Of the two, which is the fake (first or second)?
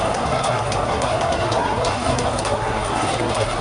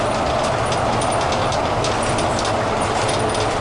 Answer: first